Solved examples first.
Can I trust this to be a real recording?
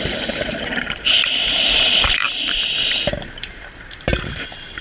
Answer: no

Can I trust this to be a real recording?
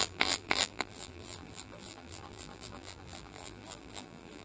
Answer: no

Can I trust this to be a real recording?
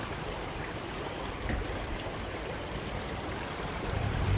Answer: no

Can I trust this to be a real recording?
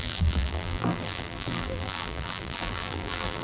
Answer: no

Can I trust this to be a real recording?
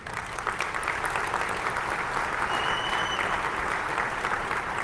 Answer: yes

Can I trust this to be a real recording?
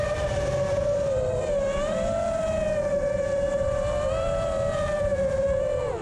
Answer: no